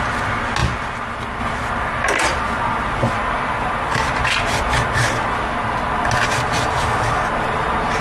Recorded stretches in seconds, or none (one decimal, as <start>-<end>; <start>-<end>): 0.0-8.0